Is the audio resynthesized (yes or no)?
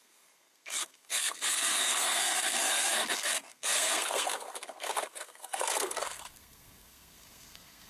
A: yes